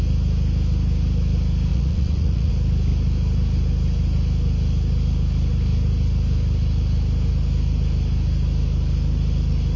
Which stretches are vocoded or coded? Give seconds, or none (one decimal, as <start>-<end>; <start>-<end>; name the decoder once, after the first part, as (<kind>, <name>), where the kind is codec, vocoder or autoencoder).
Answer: 1.7-2.5 (vocoder, Vocos)